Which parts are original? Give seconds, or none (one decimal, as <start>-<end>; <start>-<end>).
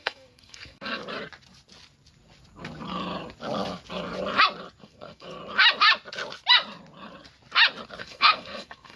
1.0-4.8; 5.4-8.0